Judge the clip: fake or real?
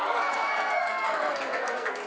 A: fake